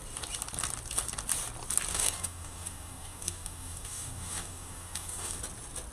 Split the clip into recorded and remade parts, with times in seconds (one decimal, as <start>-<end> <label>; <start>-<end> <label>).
0.0-1.9 recorded; 1.9-5.4 remade; 5.4-5.9 recorded